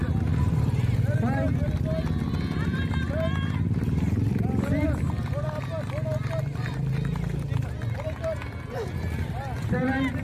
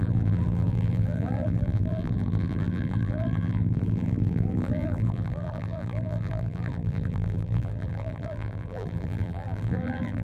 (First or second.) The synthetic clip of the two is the second